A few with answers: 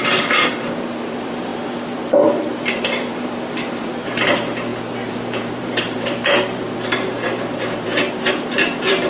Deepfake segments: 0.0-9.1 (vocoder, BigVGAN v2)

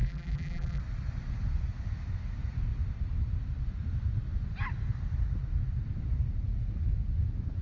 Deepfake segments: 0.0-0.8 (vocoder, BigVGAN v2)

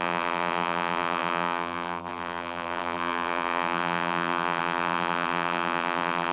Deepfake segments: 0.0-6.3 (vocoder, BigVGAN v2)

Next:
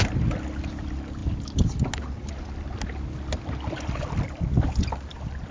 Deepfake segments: none

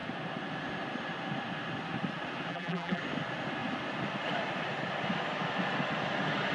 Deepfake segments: 2.5-3.0 (vocoder, BigVGAN v2)

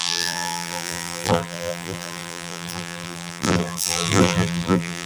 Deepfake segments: 0.0-5.1 (vocoder, BigVGAN v2)